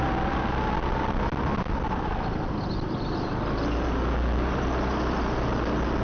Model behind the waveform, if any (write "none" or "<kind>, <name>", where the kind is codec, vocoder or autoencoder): none